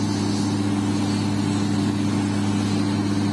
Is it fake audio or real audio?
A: real